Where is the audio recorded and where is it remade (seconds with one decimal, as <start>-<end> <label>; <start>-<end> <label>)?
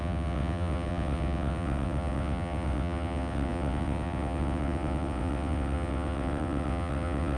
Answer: 0.0-7.4 remade